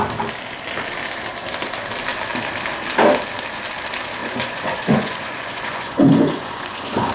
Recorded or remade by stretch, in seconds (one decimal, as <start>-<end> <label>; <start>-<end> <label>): 0.0-4.2 recorded; 4.2-7.1 remade